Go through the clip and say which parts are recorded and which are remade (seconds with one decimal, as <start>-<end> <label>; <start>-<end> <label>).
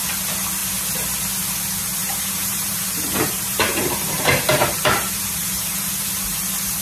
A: 0.0-2.0 recorded; 2.0-5.8 remade; 5.8-6.8 recorded